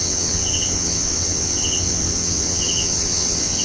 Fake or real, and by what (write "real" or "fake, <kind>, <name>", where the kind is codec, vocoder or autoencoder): fake, vocoder, WaveNeXt